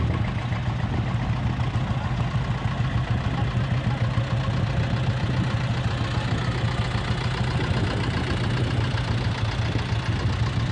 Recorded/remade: recorded